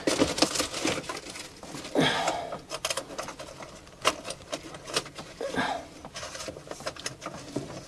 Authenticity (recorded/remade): recorded